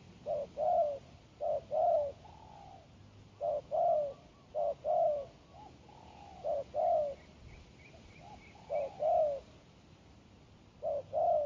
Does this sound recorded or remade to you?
recorded